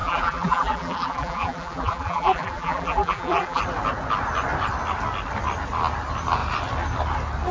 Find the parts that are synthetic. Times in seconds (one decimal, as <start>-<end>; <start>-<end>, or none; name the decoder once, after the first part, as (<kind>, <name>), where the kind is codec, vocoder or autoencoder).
0.0-3.6 (vocoder, BigVGAN v2)